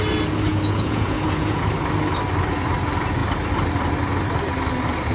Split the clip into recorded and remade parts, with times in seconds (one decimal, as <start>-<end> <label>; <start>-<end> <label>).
0.0-0.5 recorded; 0.5-1.6 remade; 1.6-5.1 recorded